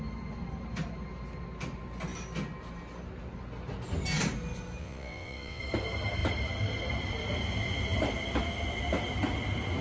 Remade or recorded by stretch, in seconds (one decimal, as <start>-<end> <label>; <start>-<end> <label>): 0.0-4.8 recorded; 4.8-5.6 remade; 5.6-9.8 recorded